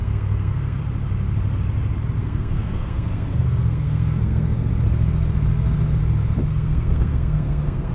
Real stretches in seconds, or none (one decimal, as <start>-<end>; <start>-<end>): 0.8-2.2; 4.7-6.5